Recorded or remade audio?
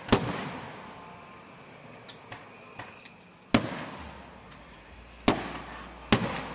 recorded